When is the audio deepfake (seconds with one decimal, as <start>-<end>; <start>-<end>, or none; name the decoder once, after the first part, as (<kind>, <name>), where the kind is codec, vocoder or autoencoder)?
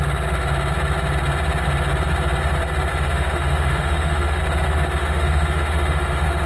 2.9-4.4 (autoencoder, DAC-VAE); 5.0-6.5